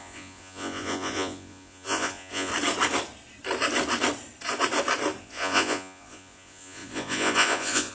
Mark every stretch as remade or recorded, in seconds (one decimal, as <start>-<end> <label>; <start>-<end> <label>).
0.0-2.5 remade; 2.5-5.2 recorded; 5.2-7.9 remade